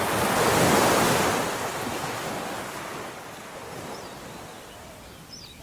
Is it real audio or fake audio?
real